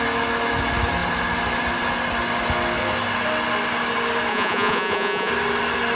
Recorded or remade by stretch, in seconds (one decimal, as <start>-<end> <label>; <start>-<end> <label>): 0.0-4.3 recorded; 4.3-5.3 remade; 5.3-6.0 recorded